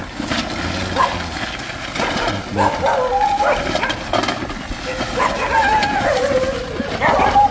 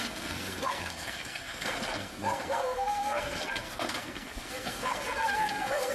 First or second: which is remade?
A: second